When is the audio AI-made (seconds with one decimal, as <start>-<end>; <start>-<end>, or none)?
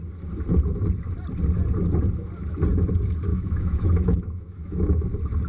3.3-5.0